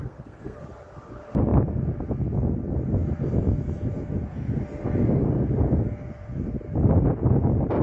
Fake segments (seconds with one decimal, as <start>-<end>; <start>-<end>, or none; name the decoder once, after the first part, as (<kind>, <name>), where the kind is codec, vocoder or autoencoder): 0.0-0.6 (codec, SNAC)